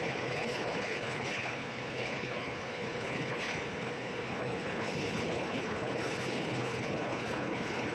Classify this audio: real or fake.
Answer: fake